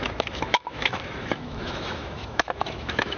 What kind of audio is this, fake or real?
fake